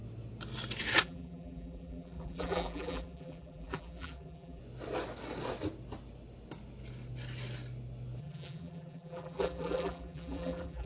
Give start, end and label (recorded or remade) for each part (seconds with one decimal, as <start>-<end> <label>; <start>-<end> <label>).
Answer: 0.0-1.0 recorded; 1.0-4.6 remade; 4.6-8.2 recorded; 8.2-10.9 remade